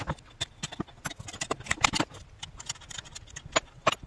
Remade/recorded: recorded